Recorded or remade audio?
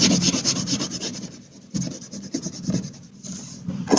recorded